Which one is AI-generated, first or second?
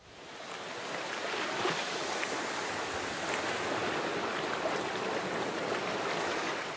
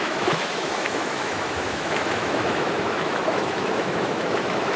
second